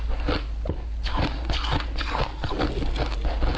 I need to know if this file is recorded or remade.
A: recorded